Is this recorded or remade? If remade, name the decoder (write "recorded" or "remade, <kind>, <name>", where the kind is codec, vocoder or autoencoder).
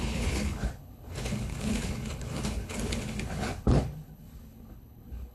remade, codec, HILCodec